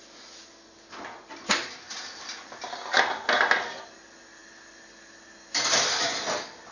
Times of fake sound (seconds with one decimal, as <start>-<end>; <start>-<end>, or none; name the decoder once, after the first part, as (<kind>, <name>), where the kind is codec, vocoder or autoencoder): none